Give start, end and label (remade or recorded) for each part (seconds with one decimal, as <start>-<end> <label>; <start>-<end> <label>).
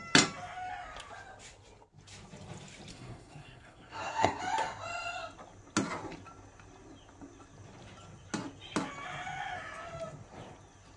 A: 0.0-2.9 recorded; 2.9-4.4 remade; 4.4-11.0 recorded